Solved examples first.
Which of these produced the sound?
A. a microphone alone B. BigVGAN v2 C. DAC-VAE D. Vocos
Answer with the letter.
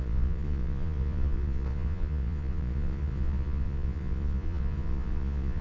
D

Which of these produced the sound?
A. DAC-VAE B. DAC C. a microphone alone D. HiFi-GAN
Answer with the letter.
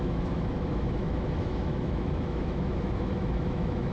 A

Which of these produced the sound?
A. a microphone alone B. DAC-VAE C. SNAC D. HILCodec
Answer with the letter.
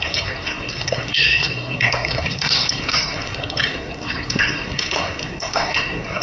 C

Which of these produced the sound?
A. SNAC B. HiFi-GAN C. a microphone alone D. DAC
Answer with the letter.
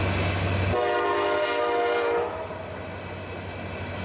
C